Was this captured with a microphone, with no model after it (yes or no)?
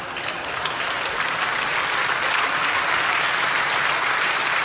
yes